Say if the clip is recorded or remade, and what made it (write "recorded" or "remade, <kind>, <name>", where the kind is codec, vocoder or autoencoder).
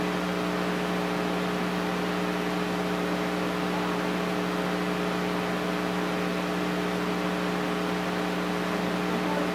recorded